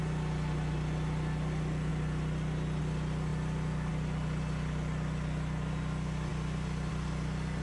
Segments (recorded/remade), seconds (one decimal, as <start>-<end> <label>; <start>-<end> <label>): 0.0-7.6 recorded